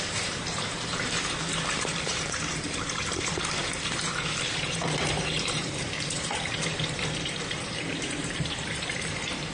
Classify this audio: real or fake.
fake